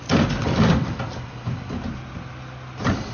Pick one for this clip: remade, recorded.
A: recorded